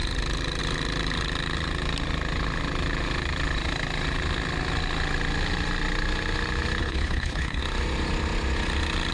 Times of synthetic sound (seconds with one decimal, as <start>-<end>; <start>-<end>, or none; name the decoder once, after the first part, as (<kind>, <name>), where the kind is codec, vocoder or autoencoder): 6.8-7.6 (codec, HILCodec)